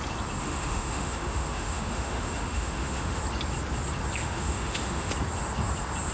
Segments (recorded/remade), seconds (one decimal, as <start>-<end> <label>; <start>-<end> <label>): 0.0-0.4 recorded; 0.4-3.2 remade; 3.2-4.2 recorded; 4.2-5.1 remade; 5.1-6.1 recorded